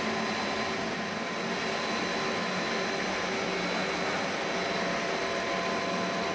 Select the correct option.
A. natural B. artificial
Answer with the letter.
A